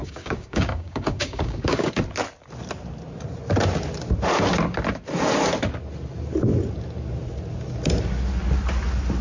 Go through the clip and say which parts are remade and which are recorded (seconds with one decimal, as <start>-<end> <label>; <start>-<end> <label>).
0.0-2.0 remade; 2.0-9.2 recorded